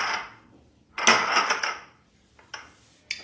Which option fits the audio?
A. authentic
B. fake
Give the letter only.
A